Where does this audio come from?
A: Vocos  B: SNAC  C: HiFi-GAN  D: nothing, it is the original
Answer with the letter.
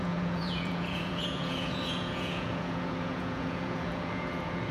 A